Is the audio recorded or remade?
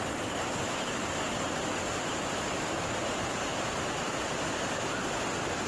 recorded